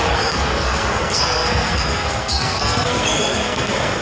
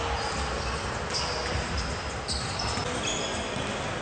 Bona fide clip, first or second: second